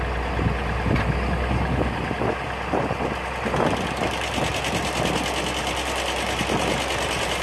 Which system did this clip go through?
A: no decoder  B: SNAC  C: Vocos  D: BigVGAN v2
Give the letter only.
A